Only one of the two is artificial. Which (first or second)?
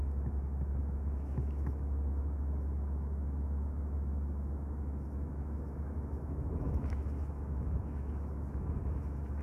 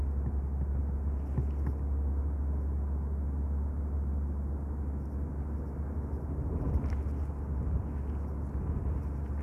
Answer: first